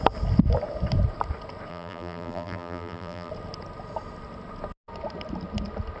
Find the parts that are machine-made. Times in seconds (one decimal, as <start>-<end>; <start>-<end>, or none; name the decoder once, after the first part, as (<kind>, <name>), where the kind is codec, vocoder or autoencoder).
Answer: 1.7-3.3 (vocoder, BigVGAN v2)